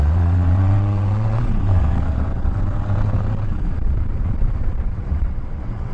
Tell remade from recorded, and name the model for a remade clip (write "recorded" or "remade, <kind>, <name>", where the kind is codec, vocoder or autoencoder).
remade, vocoder, WaveNeXt